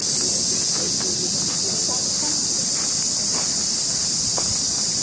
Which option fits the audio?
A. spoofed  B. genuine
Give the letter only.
B